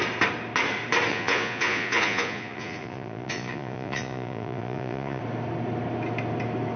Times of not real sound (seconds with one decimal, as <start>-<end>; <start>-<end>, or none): 1.1-5.2